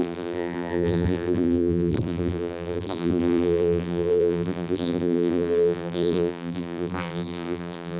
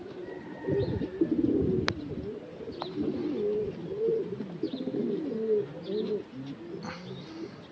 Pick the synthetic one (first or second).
first